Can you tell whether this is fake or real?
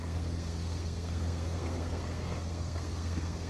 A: fake